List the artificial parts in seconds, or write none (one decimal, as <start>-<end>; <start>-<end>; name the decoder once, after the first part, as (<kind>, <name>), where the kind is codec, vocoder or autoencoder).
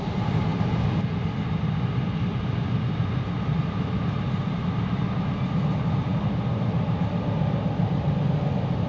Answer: none